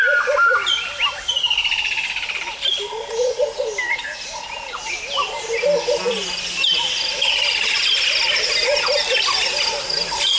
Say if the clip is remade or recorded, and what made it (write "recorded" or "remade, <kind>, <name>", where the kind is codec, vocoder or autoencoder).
recorded